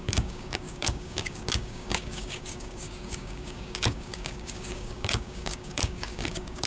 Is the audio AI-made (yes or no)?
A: yes